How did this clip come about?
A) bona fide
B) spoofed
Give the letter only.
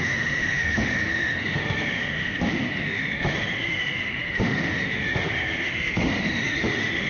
B